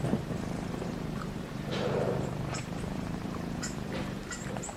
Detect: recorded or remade remade